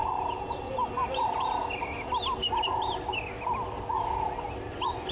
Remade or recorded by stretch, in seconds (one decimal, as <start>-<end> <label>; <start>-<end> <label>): 0.0-5.1 recorded